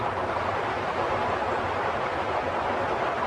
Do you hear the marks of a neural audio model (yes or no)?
no